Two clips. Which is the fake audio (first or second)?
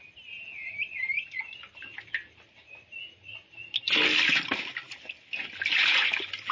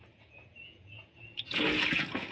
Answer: second